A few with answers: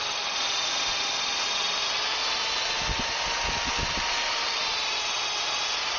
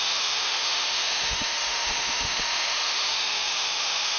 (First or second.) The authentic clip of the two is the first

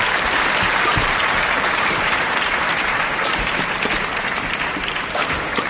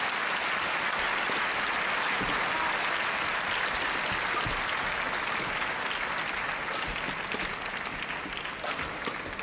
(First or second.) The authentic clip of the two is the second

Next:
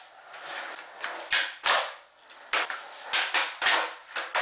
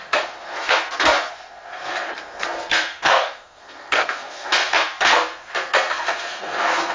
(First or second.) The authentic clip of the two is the first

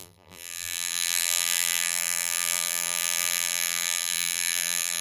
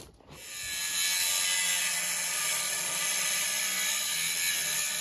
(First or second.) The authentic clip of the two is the second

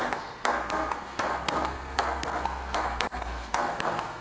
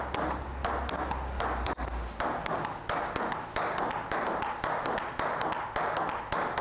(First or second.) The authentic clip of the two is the second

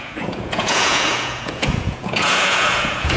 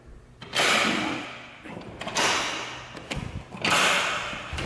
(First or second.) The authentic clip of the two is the second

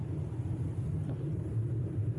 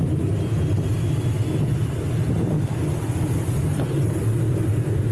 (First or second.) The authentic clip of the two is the second